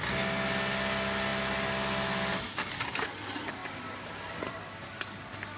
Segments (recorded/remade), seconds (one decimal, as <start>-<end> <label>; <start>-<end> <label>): 0.0-5.6 recorded